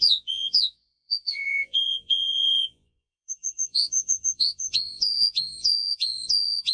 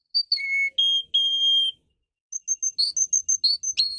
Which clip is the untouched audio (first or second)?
second